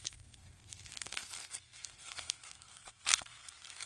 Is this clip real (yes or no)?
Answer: no